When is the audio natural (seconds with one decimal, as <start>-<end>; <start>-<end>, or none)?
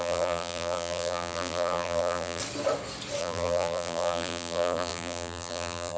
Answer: 2.4-3.2